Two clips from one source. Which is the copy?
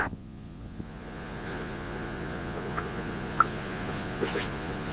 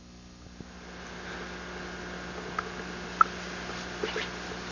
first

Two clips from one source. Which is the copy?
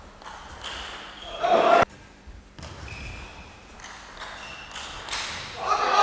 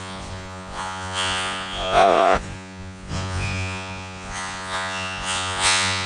second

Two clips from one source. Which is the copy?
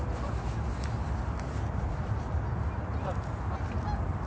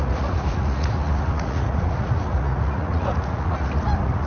second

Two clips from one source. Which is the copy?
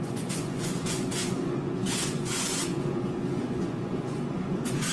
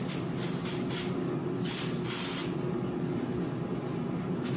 first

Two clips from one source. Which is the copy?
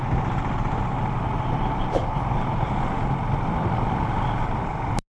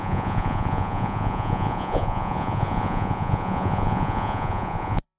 second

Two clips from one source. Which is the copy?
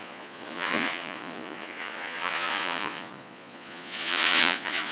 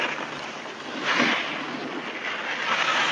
first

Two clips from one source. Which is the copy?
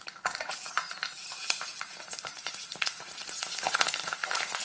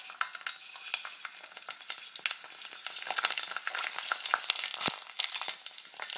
first